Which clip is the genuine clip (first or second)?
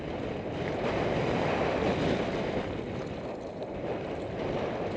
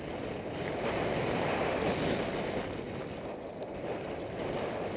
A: second